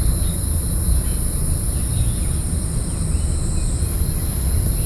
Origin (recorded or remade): recorded